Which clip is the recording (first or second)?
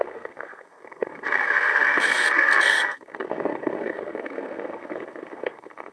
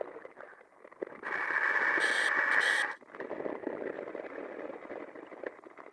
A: second